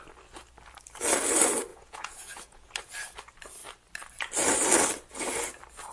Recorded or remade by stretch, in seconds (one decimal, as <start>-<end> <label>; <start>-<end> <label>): 0.0-1.7 recorded; 1.7-2.7 remade; 2.7-5.9 recorded